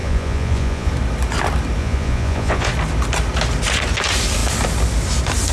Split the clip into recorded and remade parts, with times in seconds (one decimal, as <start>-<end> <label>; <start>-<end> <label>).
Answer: 0.0-0.9 remade; 0.9-1.8 recorded; 1.8-2.7 remade; 2.7-5.5 recorded